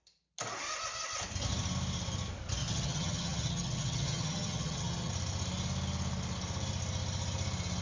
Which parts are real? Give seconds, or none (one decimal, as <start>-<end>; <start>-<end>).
0.0-2.6; 5.1-7.8